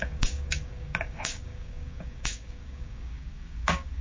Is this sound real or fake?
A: fake